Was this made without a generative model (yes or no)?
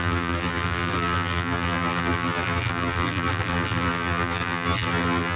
no